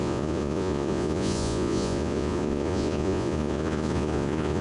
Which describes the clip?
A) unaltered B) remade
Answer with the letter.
B